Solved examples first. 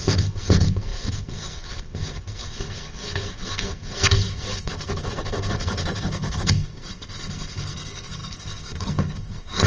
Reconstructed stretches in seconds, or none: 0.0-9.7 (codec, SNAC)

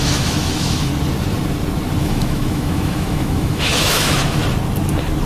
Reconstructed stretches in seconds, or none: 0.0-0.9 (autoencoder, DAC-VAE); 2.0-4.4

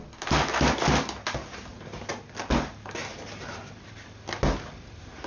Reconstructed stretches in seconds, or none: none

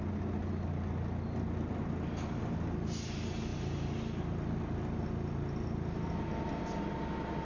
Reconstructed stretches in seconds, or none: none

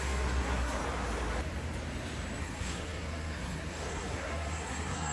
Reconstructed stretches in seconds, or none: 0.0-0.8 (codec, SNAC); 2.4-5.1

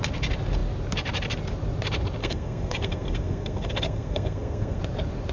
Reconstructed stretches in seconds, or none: 2.2-4.8 (codec, SNAC)

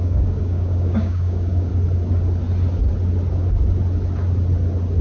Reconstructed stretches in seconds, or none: 0.0-1.7 (codec, DAC)

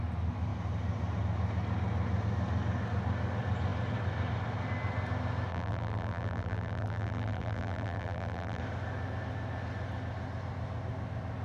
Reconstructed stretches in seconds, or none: 5.5-8.6 (vocoder, BigVGAN v2)